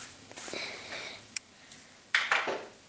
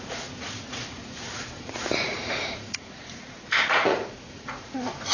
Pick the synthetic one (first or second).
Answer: second